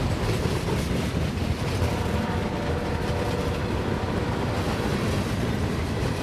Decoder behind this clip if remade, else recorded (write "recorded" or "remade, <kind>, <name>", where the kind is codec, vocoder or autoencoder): remade, vocoder, BigVGAN v2